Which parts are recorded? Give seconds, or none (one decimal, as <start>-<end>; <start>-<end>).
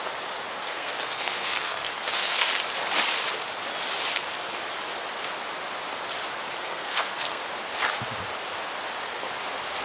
0.0-0.6; 2.5-6.6; 7.4-9.8